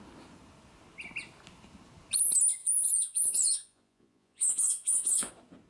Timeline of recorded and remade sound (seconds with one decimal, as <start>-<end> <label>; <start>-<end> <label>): 0.0-2.6 recorded; 2.6-5.3 remade; 5.3-5.7 recorded